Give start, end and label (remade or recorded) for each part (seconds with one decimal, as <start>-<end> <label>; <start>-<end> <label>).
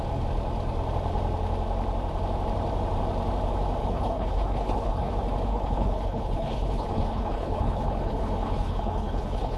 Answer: 0.0-3.8 recorded; 3.8-5.1 remade; 5.1-5.5 recorded; 5.5-9.6 remade